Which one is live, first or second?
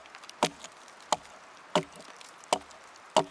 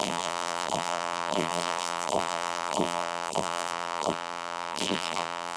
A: first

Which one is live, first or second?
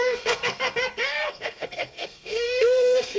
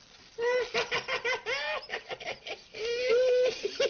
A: second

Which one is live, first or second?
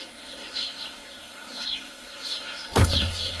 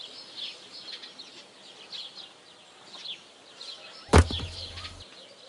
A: second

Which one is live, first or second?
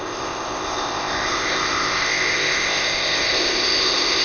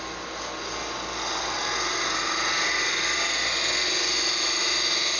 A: second